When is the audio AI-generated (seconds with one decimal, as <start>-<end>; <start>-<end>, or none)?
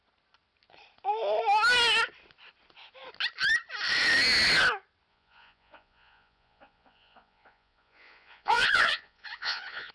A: 5.1-9.9